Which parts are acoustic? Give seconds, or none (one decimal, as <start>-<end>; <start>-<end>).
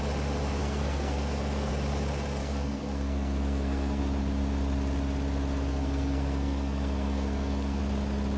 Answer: 0.0-0.6; 1.7-2.4; 4.0-5.7; 7.8-8.4